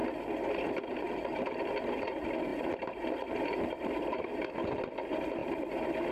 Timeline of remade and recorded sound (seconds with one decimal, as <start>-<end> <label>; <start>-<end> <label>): 0.0-2.1 recorded; 2.1-6.1 remade